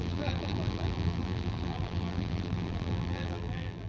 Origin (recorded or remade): remade